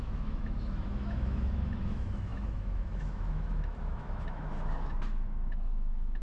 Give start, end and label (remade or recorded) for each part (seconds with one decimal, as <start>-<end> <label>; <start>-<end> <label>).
0.0-6.2 remade